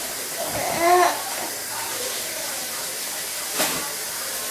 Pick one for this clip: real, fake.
real